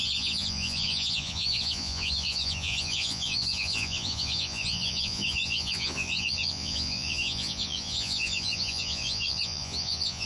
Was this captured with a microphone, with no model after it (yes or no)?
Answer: no